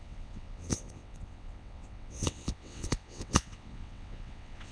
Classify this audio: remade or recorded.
remade